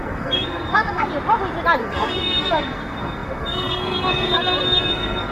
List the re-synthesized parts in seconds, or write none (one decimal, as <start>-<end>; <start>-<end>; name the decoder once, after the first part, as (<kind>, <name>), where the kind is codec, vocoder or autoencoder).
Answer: 0.0-1.1 (codec, SNAC); 1.8-5.3